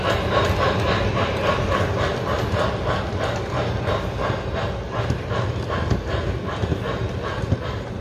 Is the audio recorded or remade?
recorded